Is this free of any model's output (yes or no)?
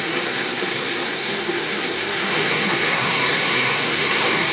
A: no